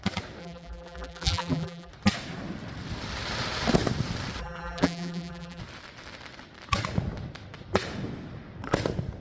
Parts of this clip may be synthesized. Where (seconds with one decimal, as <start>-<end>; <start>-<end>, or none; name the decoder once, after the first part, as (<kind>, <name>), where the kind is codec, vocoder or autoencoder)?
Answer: 0.4-1.9 (vocoder, BigVGAN v2); 4.4-5.6